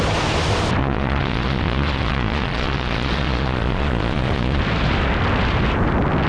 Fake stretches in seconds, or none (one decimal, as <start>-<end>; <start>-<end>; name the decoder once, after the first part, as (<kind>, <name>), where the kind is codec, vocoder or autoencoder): 0.8-4.6 (vocoder, Vocos)

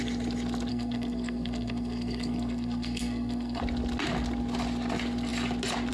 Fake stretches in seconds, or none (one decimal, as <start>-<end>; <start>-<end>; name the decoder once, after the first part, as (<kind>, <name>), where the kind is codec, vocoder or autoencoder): 0.7-3.6 (codec, SNAC)

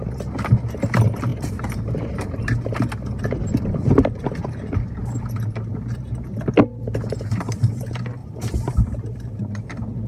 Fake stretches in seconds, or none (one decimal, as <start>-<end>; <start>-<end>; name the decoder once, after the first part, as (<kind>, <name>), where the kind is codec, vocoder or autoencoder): 1.3-2.8 (vocoder, BigVGAN v2); 8.2-9.6

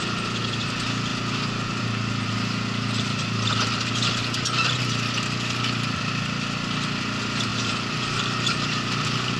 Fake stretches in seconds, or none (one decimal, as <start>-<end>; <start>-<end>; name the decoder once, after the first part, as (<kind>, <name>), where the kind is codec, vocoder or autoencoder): 7.5-9.4 (vocoder, BigVGAN v2)

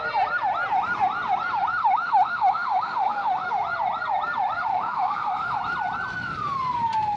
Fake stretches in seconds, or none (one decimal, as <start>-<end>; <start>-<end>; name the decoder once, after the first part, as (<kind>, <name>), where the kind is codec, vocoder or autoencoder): 1.8-3.5 (autoencoder, DAC-VAE); 4.7-5.6